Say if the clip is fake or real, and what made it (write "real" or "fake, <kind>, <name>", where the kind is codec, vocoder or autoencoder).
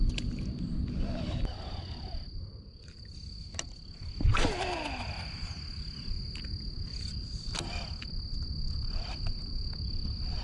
real